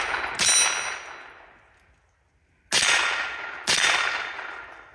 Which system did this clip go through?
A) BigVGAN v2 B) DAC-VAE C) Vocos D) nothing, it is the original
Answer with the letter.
D